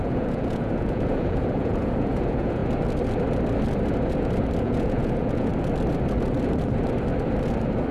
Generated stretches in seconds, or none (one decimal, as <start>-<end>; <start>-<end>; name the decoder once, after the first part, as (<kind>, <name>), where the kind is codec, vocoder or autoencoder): 0.0-2.6 (vocoder, Vocos); 4.6-5.5

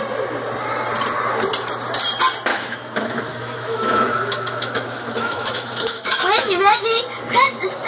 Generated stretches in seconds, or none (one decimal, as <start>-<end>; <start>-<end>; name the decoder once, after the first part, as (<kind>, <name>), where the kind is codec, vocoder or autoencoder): 2.5-7.0 (autoencoder, DAC-VAE)

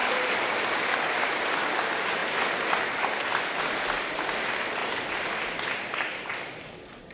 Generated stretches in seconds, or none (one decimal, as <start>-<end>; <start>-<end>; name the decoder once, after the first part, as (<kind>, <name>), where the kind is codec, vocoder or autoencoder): none

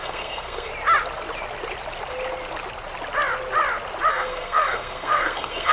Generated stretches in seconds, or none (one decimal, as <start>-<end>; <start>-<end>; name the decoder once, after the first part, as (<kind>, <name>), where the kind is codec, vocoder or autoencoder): 0.0-0.7 (codec, SNAC); 4.1-5.7

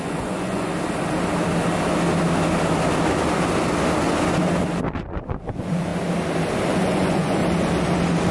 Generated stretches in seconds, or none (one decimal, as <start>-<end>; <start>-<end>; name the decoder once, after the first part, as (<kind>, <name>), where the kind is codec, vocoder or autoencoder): 0.0-0.7 (vocoder, Vocos); 5.1-5.9; 6.7-7.4

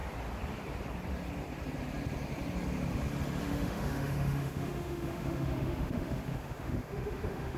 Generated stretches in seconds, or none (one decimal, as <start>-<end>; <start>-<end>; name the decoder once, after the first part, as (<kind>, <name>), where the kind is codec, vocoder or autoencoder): 3.4-7.6 (autoencoder, DAC-VAE)

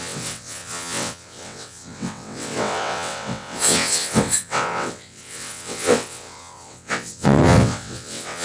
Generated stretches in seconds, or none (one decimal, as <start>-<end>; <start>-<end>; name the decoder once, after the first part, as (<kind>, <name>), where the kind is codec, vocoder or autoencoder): 0.0-8.4 (vocoder, WaveNeXt)

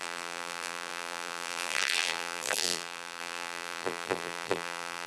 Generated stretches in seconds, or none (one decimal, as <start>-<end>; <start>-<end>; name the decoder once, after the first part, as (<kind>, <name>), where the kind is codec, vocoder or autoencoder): 0.0-5.1 (vocoder, BigVGAN v2)